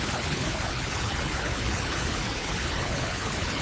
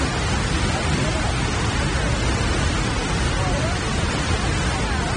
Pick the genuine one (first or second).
second